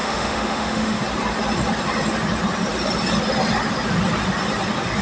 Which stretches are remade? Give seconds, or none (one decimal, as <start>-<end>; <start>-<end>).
0.0-1.0